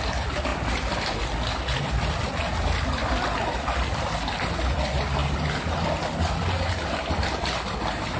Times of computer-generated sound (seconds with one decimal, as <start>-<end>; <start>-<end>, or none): none